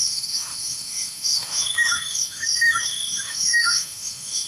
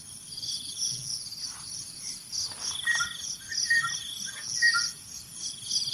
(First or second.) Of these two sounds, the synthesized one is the first